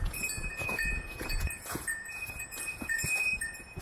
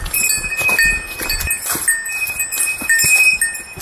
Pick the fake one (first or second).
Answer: first